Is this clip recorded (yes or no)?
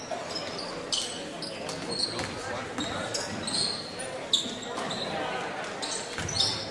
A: yes